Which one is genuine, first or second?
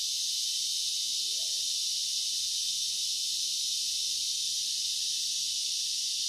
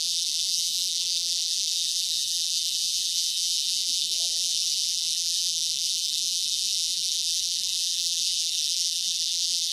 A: first